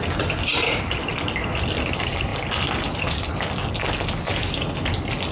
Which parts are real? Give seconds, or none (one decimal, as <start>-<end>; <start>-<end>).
0.0-5.3